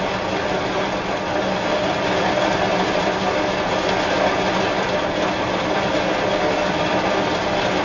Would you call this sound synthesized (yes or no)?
no